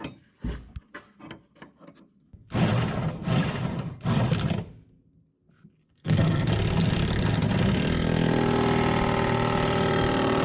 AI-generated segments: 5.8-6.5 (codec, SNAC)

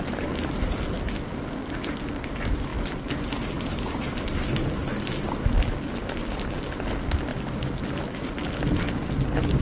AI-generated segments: none